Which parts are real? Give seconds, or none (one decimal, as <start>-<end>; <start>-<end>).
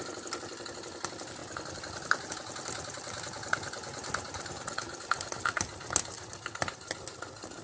0.0-7.6